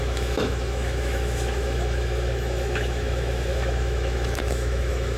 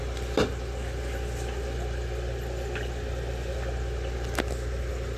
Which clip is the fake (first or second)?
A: first